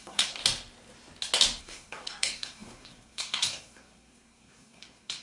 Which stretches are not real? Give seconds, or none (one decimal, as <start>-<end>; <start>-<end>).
0.0-0.4; 1.6-5.2